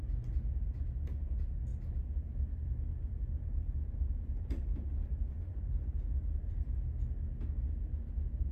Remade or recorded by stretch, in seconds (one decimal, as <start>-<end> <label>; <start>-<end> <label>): 0.0-1.7 recorded; 1.7-6.8 remade; 6.8-8.5 recorded